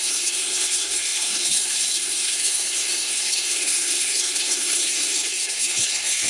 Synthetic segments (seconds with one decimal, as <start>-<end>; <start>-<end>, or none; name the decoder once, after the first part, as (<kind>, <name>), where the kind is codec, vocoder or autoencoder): 0.0-6.3 (codec, SNAC)